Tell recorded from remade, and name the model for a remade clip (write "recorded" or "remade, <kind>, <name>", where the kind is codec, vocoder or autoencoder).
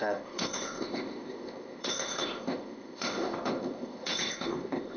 remade, codec, ZipCodec